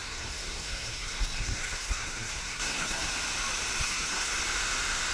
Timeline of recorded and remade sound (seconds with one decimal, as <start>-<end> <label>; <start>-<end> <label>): 0.0-3.1 remade; 3.1-3.8 recorded; 3.8-4.3 remade; 4.3-5.1 recorded